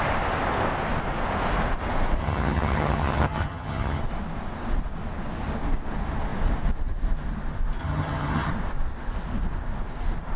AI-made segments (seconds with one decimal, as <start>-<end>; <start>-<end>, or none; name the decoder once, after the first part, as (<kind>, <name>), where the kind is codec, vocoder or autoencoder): 2.2-4.0 (vocoder, HiFi-GAN); 7.8-8.5